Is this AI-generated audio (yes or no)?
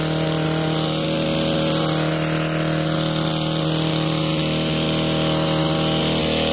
no